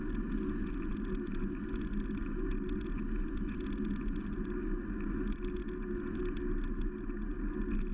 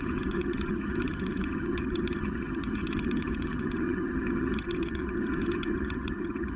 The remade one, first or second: second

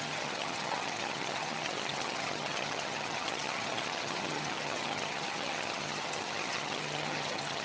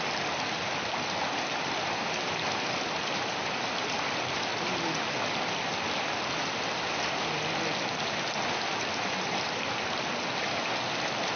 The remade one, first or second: first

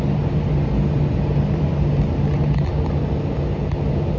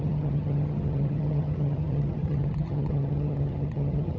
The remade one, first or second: second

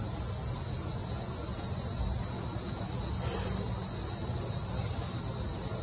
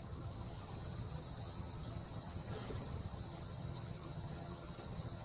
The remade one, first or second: second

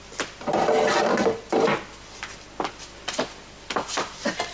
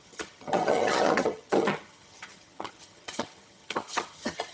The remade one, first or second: second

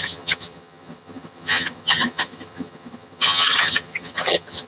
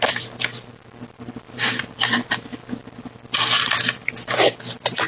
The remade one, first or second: first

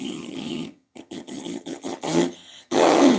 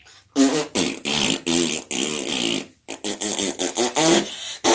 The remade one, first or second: first